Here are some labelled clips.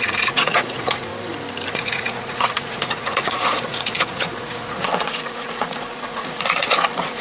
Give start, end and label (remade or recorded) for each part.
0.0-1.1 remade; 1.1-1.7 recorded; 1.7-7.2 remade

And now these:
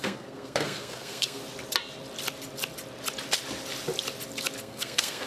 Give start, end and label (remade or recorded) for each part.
0.0-1.4 remade; 1.4-4.6 recorded; 4.6-5.3 remade

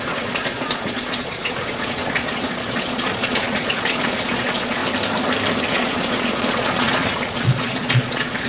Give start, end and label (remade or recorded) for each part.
0.0-4.8 remade; 4.8-5.7 recorded; 5.7-8.5 remade

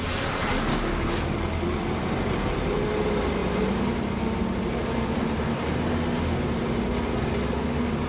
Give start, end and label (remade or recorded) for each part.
0.0-0.7 recorded; 0.7-1.2 remade; 1.2-8.1 recorded

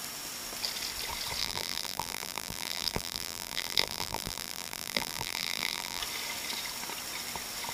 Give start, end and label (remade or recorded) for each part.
0.0-1.4 recorded; 1.4-6.0 remade; 6.0-7.7 recorded

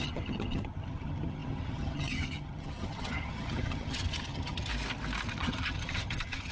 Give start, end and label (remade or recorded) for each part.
0.0-4.7 remade; 4.7-5.3 recorded; 5.3-6.5 remade